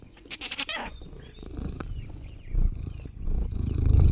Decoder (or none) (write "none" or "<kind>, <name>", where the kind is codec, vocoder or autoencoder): vocoder, Vocos